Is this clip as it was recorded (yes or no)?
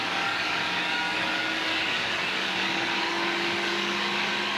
no